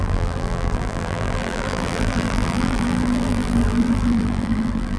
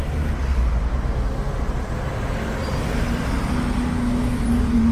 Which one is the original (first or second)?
second